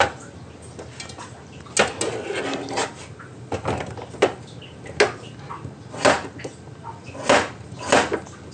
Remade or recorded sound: recorded